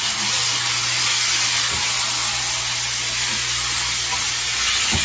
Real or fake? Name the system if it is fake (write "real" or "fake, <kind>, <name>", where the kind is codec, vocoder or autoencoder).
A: real